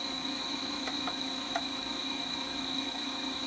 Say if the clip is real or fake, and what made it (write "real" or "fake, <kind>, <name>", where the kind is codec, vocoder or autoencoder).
fake, autoencoder, DAC-VAE